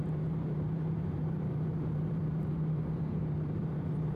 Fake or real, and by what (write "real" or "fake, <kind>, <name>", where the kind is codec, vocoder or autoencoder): fake, vocoder, BigVGAN v2